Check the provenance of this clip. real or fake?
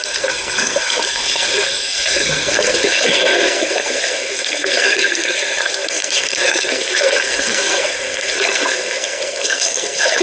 fake